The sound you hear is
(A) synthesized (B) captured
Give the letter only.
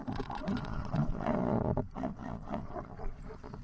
A